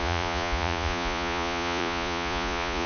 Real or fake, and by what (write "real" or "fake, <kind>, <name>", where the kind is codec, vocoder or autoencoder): fake, vocoder, Vocos